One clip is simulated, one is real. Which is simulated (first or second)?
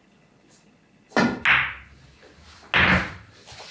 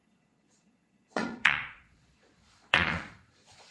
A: second